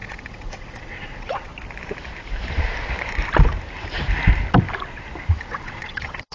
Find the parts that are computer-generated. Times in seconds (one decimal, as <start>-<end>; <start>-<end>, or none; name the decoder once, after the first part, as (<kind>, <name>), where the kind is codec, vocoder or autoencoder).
0.0-1.5 (vocoder, WaveNeXt); 5.3-6.3